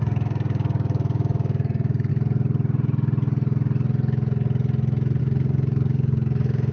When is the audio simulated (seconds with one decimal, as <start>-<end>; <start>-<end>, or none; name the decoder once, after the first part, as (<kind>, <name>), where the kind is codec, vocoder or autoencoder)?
0.0-2.1 (codec, DAC); 5.2-6.7